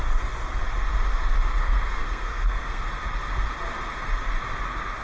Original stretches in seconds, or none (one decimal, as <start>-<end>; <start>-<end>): 0.0-1.6; 2.8-5.0